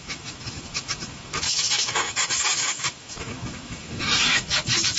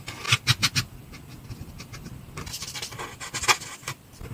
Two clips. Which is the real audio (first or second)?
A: second